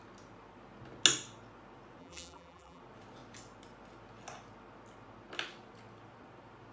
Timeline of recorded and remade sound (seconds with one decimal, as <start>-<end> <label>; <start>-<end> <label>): 0.0-2.0 recorded; 2.0-2.8 remade; 2.8-6.7 recorded